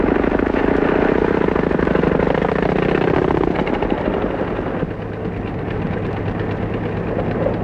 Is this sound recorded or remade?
recorded